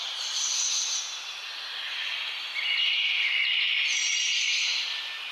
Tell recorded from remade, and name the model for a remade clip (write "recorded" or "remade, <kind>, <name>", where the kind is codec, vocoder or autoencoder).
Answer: recorded